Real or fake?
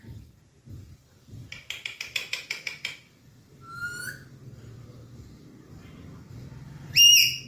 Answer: fake